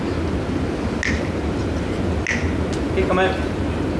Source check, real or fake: real